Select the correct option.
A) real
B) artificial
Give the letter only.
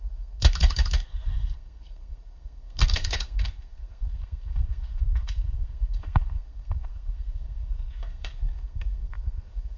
B